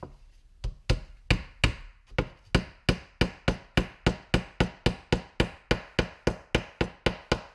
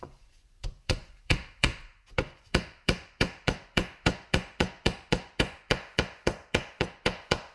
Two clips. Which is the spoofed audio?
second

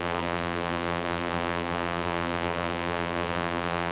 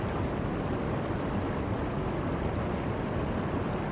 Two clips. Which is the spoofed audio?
first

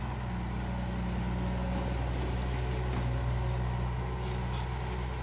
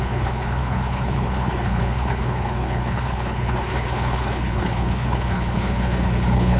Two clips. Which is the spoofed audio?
second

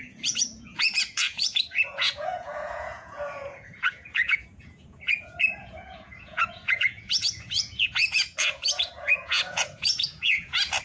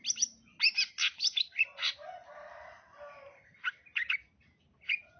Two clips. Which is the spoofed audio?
first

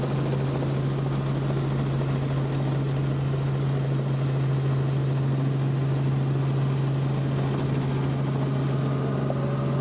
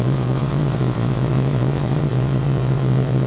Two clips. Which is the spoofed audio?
second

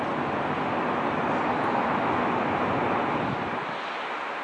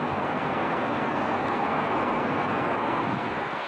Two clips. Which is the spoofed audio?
second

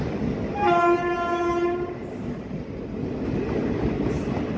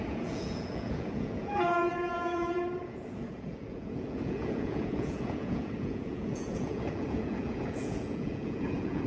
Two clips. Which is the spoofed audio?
second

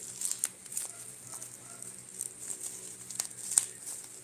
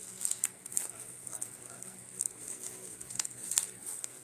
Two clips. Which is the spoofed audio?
second